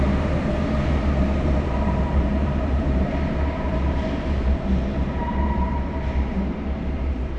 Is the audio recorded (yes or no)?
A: no